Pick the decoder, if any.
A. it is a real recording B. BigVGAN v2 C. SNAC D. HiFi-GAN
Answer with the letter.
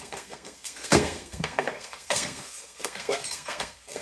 C